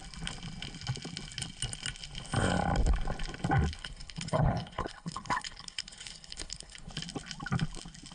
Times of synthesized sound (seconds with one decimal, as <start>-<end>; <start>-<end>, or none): 3.8-6.9